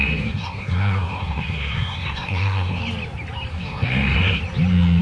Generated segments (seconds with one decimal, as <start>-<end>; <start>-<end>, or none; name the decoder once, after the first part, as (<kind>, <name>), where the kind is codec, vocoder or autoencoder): 0.0-2.8 (codec, SNAC); 3.5-4.4